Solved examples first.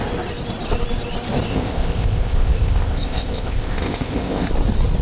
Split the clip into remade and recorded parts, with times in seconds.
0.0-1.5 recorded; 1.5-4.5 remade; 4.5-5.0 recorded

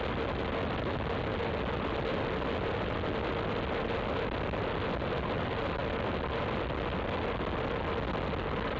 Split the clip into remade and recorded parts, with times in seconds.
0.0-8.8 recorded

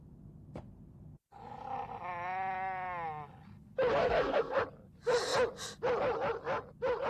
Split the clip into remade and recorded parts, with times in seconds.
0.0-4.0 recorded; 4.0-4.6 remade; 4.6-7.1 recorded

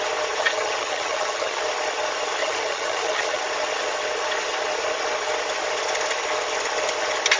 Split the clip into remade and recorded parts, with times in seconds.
0.0-0.4 recorded; 0.4-1.6 remade; 1.6-2.4 recorded; 2.4-3.4 remade; 3.4-7.4 recorded

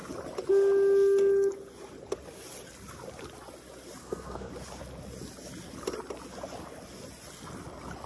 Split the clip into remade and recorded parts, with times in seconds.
0.0-4.0 recorded; 4.0-4.5 remade; 4.5-8.1 recorded

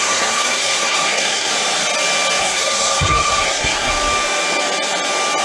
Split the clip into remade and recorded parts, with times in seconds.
0.0-1.5 remade; 1.5-2.4 recorded; 2.4-3.9 remade; 3.9-5.4 recorded

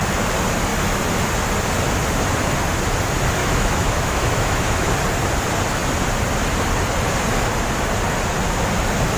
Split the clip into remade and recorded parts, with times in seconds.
0.0-3.4 recorded; 3.4-4.9 remade; 4.9-9.2 recorded